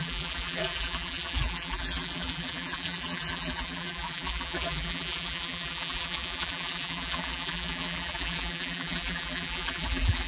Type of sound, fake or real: fake